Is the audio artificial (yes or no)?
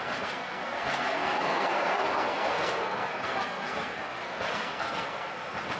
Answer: yes